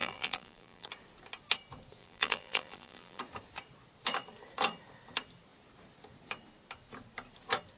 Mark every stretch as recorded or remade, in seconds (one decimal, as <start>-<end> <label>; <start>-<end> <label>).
0.0-0.9 remade; 0.9-2.0 recorded; 2.0-3.2 remade; 3.2-7.8 recorded